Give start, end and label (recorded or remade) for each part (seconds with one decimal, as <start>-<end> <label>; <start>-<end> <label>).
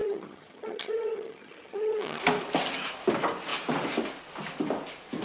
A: 0.0-2.2 remade; 2.2-5.2 recorded